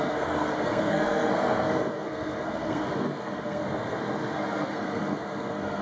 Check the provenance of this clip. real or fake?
fake